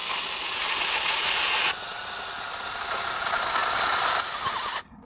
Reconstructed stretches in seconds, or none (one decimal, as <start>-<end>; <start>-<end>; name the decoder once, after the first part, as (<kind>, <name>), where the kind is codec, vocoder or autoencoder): none